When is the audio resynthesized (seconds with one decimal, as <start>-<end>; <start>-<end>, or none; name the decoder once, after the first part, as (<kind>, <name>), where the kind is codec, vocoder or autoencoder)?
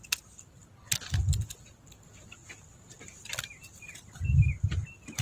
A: none